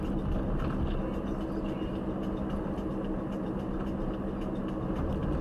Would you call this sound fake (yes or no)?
no